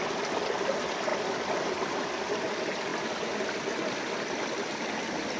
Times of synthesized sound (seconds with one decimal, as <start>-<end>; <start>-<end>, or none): none